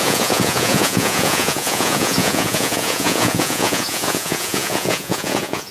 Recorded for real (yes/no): no